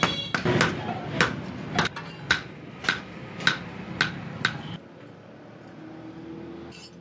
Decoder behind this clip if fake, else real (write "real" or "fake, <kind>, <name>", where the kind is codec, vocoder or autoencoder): real